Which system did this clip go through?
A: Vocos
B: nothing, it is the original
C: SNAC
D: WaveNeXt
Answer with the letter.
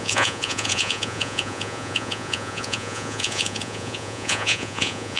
A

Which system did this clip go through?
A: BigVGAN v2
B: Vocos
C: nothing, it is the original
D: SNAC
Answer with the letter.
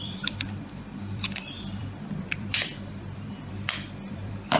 A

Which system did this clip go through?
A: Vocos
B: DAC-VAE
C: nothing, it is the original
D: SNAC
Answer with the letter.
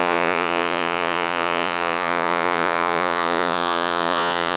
A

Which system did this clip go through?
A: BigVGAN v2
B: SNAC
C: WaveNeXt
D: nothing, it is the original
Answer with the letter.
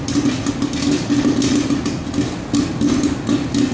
D